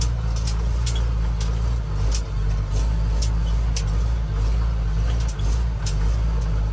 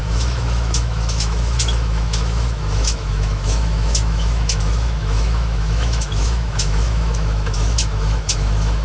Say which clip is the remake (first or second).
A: second